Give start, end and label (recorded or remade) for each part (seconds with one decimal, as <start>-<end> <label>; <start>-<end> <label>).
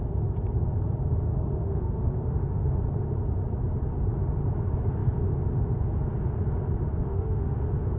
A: 0.0-1.3 recorded; 1.3-2.8 remade; 2.8-7.0 recorded; 7.0-7.6 remade; 7.6-8.0 recorded